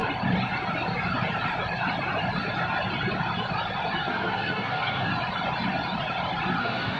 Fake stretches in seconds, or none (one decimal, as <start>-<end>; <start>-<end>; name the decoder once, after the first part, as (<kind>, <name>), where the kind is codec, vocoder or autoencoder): 4.1-5.1 (codec, SNAC); 6.6-7.0